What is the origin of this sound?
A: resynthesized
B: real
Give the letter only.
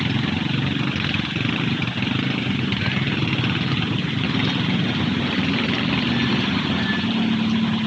B